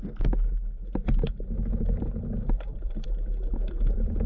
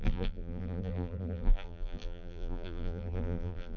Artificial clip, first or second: second